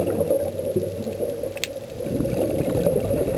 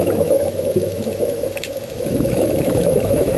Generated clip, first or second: second